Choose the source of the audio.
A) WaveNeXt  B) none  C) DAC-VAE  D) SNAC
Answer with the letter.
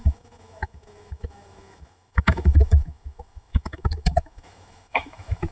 C